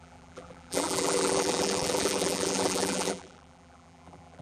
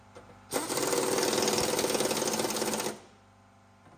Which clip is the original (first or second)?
second